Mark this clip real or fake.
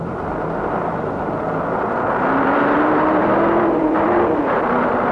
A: fake